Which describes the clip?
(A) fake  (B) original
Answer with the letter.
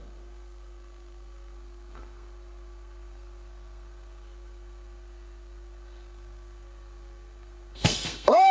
A